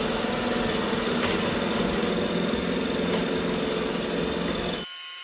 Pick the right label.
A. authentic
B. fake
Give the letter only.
A